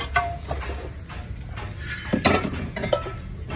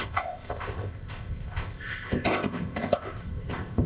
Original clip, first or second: first